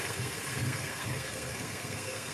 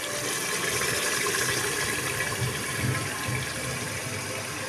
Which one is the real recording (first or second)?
second